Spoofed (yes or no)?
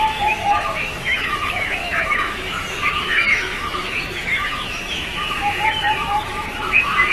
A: yes